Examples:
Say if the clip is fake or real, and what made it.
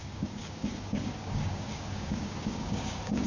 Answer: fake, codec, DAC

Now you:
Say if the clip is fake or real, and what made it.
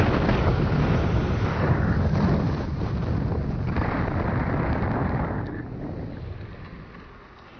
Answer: real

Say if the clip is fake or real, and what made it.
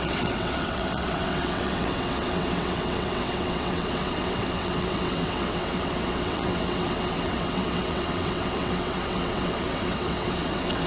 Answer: fake, vocoder, WaveNeXt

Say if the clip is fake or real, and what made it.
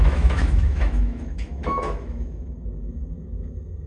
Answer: fake, autoencoder, DAC-VAE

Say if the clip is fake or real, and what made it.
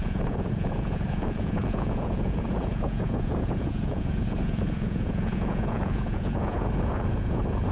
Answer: fake, vocoder, Vocos